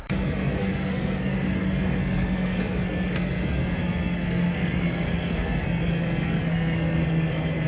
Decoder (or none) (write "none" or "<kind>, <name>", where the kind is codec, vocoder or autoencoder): codec, SNAC